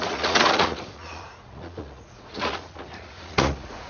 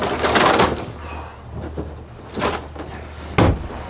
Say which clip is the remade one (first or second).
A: first